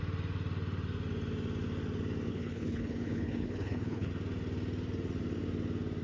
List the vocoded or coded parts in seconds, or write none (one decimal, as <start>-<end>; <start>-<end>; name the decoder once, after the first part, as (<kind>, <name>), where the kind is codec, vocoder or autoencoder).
2.3-4.1 (codec, HILCodec)